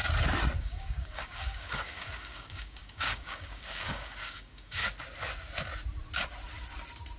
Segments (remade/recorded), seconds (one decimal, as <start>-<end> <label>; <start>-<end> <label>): 0.0-0.6 recorded; 0.6-4.8 remade; 4.8-7.2 recorded